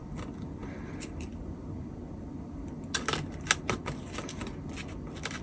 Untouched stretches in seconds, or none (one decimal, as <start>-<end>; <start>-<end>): 0.0-5.4